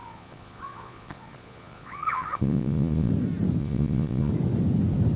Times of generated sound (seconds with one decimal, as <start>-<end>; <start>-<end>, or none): 0.0-3.1; 3.6-4.3